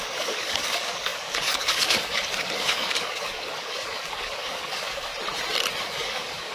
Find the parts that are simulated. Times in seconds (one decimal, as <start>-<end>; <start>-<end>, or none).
0.0-5.1; 5.8-6.5

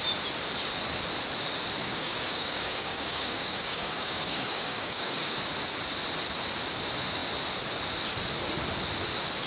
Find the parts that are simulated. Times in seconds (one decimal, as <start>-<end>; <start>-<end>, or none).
1.8-5.4